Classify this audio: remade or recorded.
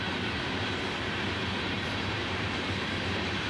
remade